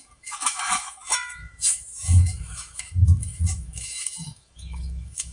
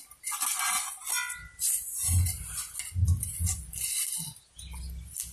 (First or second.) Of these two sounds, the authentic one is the second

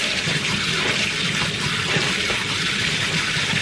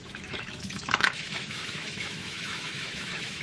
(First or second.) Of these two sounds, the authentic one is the first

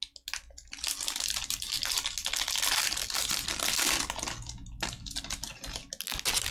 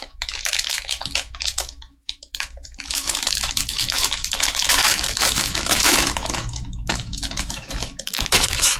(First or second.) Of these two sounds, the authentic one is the first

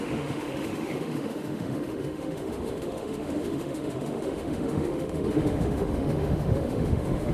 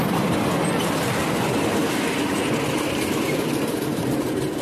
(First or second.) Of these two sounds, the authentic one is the second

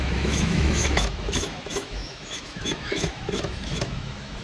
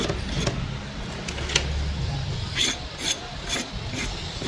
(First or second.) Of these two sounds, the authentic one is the second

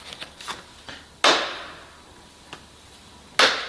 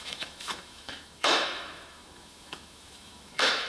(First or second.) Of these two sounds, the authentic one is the first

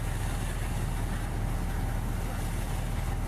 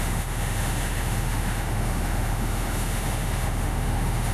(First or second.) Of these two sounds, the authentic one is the first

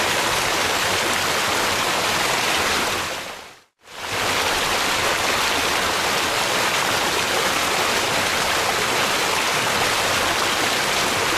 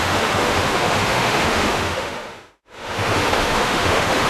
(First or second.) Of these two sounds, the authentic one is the first